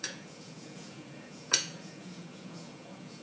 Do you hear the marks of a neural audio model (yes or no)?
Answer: yes